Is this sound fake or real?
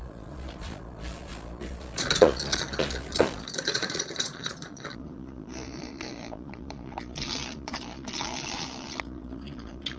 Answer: fake